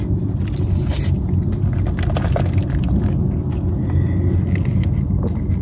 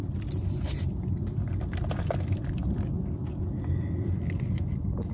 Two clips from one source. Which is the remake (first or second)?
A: second